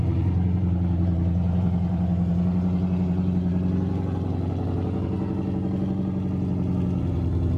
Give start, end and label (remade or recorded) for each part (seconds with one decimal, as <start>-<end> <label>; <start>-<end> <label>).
0.0-3.5 remade; 3.5-7.0 recorded; 7.0-7.6 remade